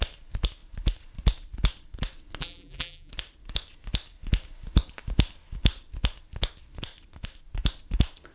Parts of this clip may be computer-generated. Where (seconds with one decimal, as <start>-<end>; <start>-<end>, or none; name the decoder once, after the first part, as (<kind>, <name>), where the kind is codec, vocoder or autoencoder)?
2.4-3.1 (vocoder, BigVGAN v2)